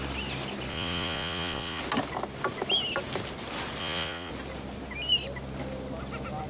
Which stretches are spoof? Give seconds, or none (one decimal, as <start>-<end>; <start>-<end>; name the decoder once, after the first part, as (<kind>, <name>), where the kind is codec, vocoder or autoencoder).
0.7-1.8 (vocoder, Vocos); 3.8-4.3